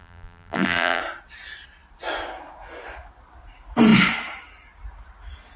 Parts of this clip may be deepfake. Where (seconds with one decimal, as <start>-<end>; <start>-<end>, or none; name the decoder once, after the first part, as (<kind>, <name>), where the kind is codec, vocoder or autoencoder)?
0.0-1.0 (vocoder, BigVGAN v2)